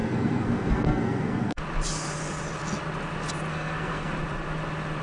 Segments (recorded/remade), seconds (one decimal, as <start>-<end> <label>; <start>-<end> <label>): 0.0-1.6 remade; 1.6-3.5 recorded; 3.5-4.1 remade; 4.1-5.0 recorded